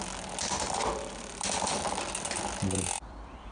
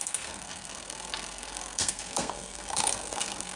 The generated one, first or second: second